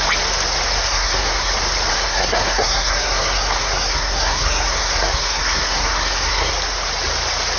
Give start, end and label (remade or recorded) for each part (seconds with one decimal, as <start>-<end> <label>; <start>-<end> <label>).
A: 0.0-0.8 recorded; 0.8-1.5 remade; 1.5-1.9 recorded; 1.9-6.5 remade; 6.5-7.6 recorded